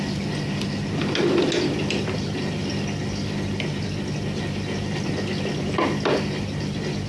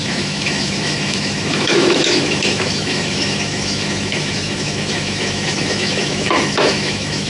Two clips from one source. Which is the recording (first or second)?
first